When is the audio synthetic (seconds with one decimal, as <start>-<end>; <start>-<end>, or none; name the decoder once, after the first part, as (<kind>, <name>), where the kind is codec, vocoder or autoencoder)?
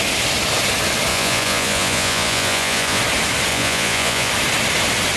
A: 1.1-3.0 (vocoder, Vocos); 3.5-4.3